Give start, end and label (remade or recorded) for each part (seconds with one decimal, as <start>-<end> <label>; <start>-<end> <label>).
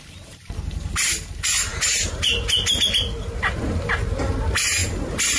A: 0.0-5.4 recorded